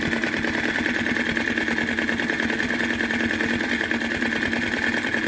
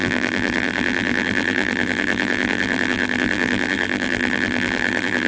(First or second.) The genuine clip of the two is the first